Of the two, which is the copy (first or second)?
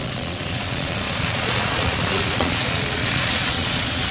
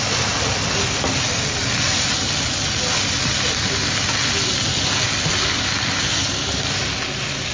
first